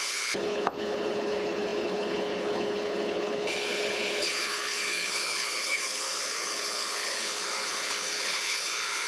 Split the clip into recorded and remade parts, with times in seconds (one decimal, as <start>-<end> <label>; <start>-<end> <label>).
0.0-9.1 remade